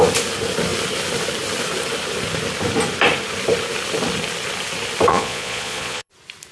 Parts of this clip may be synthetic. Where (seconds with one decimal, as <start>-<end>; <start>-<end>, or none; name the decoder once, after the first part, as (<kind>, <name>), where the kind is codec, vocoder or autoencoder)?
5.1-6.1 (vocoder, Vocos)